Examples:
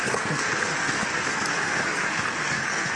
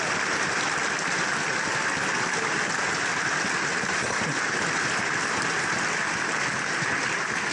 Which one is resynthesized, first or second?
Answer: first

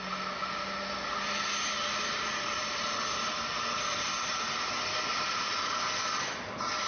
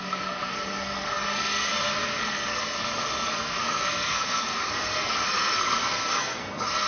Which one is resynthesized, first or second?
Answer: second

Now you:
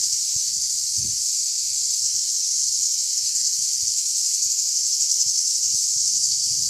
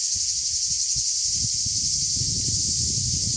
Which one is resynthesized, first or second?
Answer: first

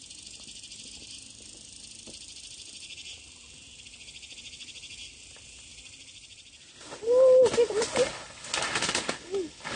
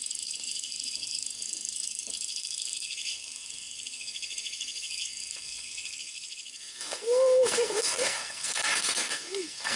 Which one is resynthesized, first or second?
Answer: second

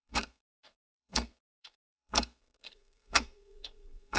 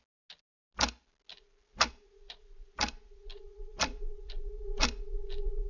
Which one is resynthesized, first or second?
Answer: first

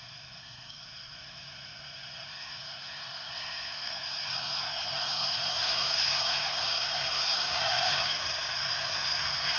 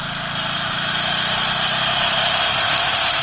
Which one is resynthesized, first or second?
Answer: first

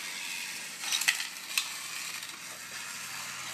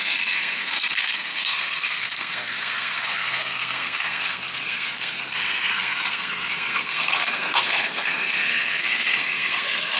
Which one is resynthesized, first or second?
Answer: second